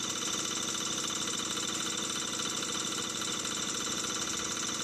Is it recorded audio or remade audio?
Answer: recorded